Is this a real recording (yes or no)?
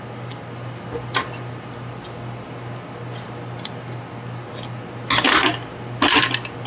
yes